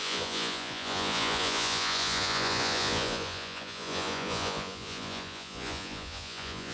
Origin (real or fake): fake